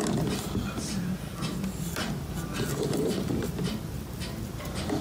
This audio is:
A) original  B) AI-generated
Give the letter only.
B